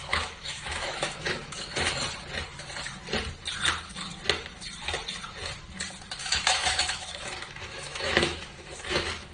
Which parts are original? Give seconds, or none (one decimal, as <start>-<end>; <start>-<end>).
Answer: 2.0-6.2